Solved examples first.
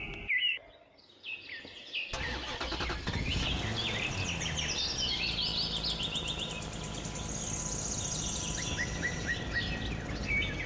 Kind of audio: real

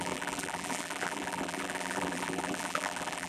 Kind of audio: fake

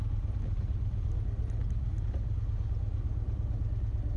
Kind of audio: real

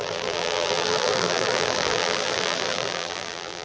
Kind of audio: fake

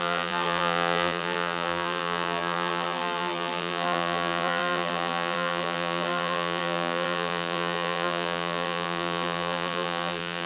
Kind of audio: fake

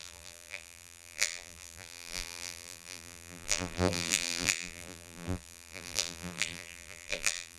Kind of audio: fake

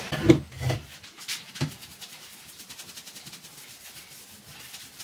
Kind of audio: fake